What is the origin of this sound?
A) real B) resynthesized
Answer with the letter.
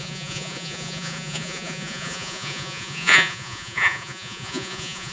B